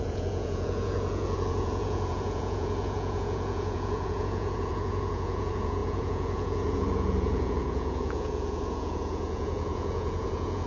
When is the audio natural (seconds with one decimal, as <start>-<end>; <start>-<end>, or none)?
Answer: none